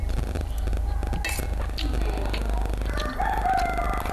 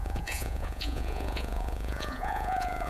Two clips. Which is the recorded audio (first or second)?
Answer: first